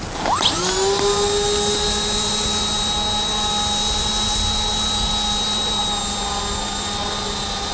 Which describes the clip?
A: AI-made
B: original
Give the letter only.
B